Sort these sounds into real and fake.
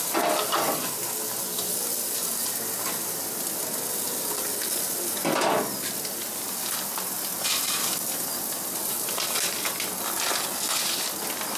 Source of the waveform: real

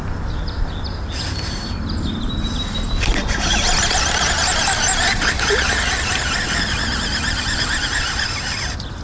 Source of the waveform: real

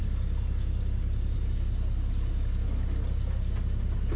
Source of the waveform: real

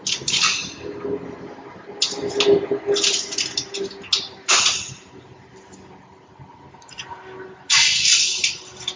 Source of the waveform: real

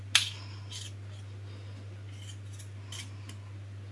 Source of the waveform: real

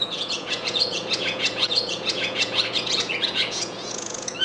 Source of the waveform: fake